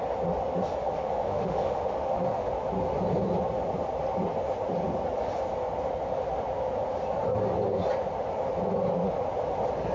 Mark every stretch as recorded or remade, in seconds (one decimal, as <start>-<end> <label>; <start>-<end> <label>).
0.0-0.8 recorded; 0.8-2.5 remade; 2.5-9.9 recorded